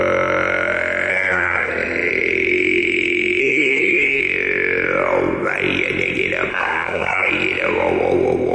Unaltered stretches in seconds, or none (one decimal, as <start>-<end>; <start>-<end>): 0.0-1.1; 1.7-3.4; 4.2-6.5; 7.3-8.5

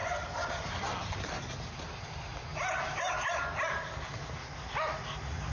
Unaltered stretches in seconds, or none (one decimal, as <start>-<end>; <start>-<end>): 1.5-2.5; 3.1-3.5; 5.0-5.5